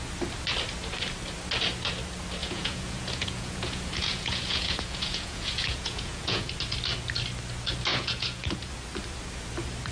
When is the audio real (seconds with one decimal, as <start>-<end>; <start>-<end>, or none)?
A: 0.0-2.4; 6.5-7.9; 8.7-9.9